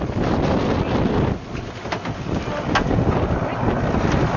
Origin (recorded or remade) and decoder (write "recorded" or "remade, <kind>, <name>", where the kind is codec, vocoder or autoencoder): recorded